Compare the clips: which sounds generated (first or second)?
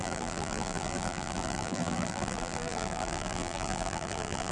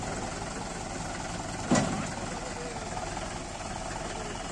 first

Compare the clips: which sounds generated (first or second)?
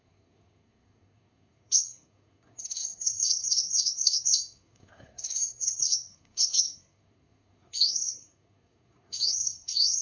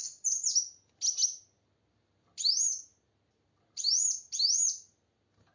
first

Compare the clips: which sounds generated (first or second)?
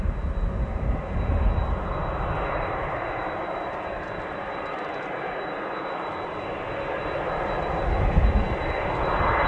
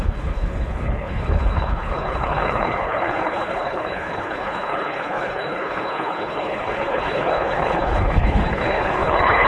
second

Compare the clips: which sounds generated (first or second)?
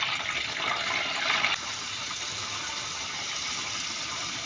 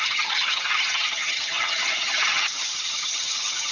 second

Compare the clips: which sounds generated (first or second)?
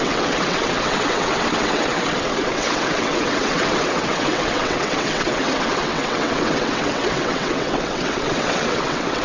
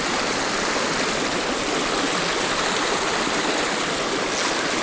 first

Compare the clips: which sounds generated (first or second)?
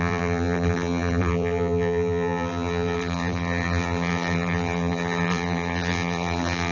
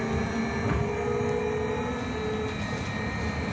first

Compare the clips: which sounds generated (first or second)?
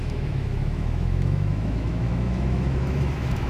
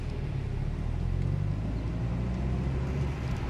first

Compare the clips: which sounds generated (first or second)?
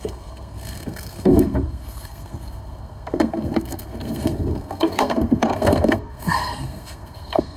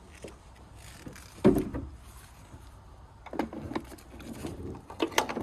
first